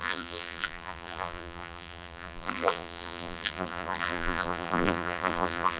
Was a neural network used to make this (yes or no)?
yes